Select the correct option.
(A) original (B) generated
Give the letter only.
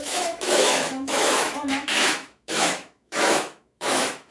B